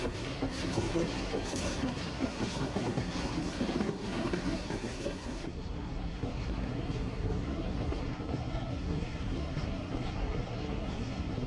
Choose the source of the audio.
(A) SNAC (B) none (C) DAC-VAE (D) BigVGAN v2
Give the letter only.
A